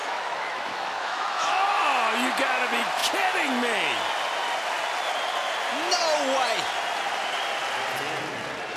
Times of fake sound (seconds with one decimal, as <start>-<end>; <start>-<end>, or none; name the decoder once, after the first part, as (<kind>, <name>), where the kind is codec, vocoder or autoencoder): 0.0-1.5 (autoencoder, DAC-VAE)